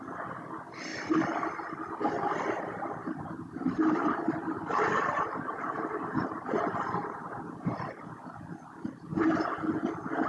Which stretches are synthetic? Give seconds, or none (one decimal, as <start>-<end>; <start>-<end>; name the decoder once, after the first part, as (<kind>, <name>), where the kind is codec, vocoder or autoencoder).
3.0-8.1 (vocoder, BigVGAN v2)